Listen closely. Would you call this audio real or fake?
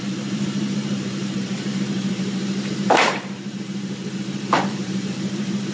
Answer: fake